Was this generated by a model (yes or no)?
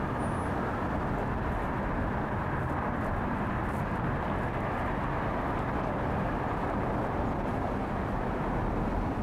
no